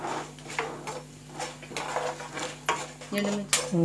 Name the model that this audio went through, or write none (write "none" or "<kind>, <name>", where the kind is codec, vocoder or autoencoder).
none